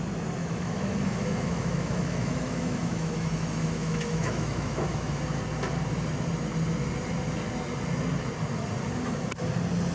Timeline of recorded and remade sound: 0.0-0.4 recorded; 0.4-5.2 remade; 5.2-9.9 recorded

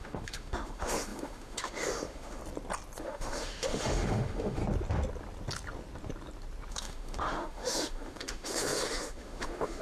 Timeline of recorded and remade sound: 0.0-2.4 remade; 2.4-3.0 recorded; 3.0-4.6 remade; 4.6-6.7 recorded; 6.7-9.8 remade

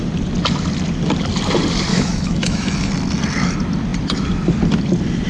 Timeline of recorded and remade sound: 0.0-1.9 recorded; 1.9-2.9 remade; 2.9-5.3 recorded